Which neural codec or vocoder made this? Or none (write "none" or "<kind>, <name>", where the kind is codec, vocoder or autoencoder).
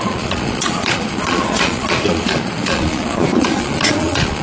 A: vocoder, Vocos